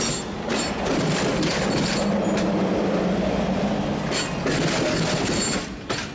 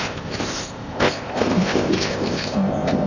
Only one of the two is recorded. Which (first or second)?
first